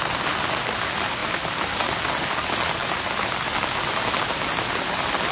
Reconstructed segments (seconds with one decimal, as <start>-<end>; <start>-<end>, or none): none